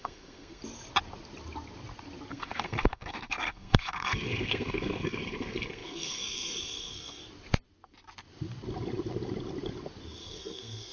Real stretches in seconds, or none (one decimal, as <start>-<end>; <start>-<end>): 0.6-2.3; 7.2-10.2